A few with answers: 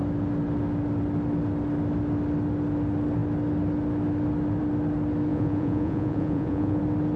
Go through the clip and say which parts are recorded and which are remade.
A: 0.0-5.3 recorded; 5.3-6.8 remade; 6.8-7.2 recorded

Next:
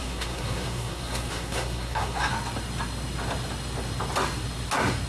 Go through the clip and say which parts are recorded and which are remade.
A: 0.0-2.3 remade; 2.3-5.1 recorded

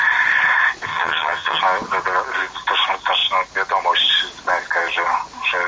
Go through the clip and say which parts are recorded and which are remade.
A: 0.0-0.9 recorded; 0.9-1.6 remade; 1.6-5.7 recorded

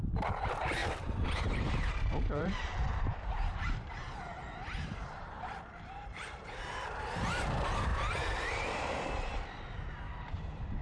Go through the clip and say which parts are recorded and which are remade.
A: 0.0-10.8 remade

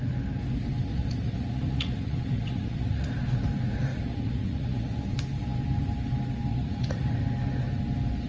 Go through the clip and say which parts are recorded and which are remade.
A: 0.0-0.9 recorded; 0.9-3.1 remade; 3.1-3.9 recorded; 3.9-5.0 remade; 5.0-6.5 recorded; 6.5-7.1 remade; 7.1-8.3 recorded

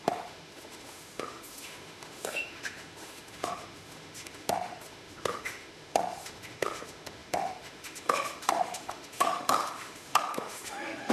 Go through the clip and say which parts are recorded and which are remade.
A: 0.0-11.1 remade

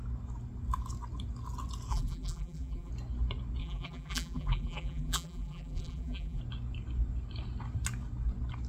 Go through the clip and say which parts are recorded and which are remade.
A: 0.0-1.9 recorded; 1.9-2.9 remade; 2.9-3.6 recorded; 3.6-6.4 remade; 6.4-8.7 recorded

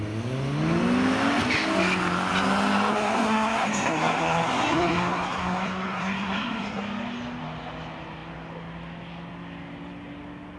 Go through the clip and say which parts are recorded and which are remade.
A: 0.0-2.9 recorded; 2.9-6.8 remade; 6.8-10.6 recorded